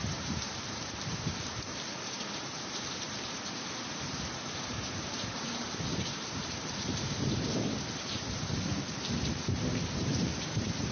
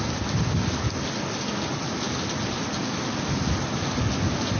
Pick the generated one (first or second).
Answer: first